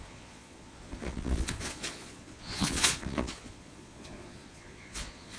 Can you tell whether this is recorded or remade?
remade